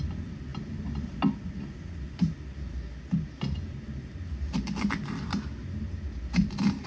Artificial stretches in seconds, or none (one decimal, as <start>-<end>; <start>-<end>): none

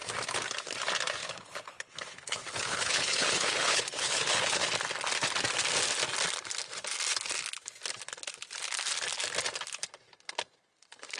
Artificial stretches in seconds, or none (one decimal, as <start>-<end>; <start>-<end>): 1.2-4.7

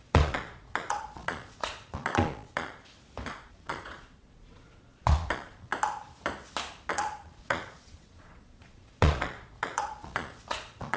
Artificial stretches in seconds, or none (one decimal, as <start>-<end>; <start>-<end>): 0.0-2.8; 3.3-5.7; 6.9-11.0

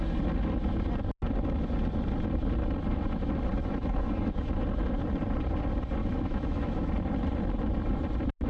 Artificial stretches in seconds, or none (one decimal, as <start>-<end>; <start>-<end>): 3.6-4.5; 6.0-6.9

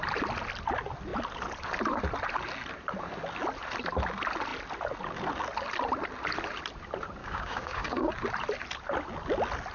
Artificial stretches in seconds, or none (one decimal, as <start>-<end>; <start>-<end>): 7.2-8.1